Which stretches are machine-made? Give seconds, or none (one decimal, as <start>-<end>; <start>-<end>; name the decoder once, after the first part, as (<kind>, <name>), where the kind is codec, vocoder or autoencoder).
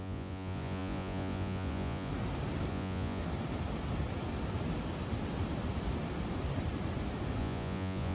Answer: 0.0-2.1 (vocoder, Vocos); 2.7-3.2; 7.4-8.1